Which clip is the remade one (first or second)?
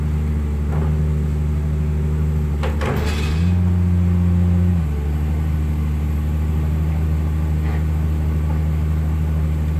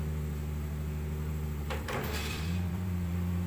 second